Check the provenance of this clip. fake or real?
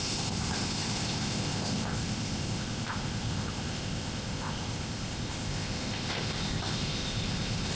fake